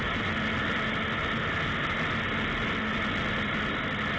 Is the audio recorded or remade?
recorded